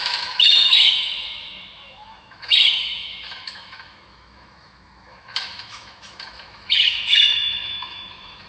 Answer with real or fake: fake